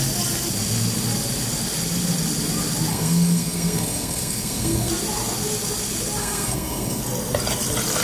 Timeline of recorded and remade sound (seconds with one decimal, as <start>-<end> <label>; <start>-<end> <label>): 0.0-2.9 recorded; 2.9-4.9 remade; 4.9-6.2 recorded; 6.2-7.0 remade; 7.0-8.0 recorded